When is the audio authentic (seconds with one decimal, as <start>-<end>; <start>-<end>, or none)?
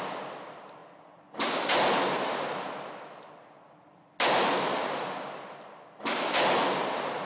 0.0-7.3